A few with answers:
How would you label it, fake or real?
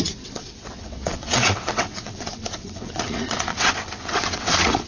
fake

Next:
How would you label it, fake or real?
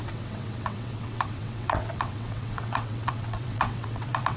fake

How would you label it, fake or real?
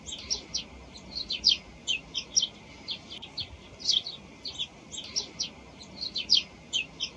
real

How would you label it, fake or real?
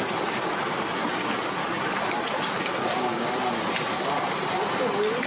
real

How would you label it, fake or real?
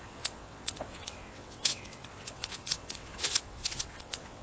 fake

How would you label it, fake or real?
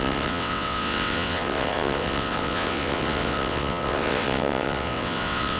fake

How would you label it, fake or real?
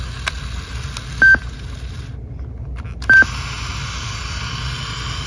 real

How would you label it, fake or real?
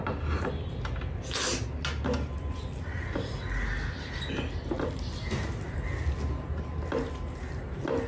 real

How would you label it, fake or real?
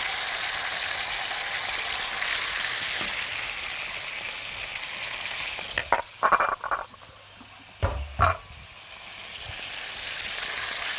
real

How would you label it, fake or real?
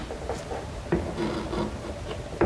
real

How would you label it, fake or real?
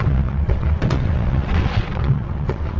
fake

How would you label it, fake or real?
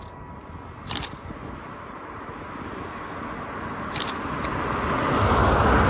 real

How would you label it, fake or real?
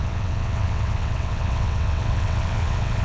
fake